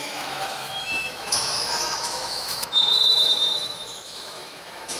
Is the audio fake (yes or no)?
yes